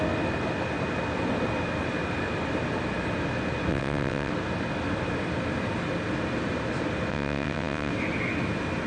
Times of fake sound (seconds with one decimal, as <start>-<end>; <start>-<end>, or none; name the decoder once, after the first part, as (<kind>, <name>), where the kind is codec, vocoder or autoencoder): 3.7-4.3 (vocoder, WaveNeXt); 7.1-7.9